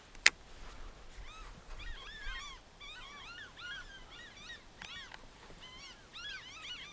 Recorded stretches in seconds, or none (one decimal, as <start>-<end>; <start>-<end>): 0.0-6.9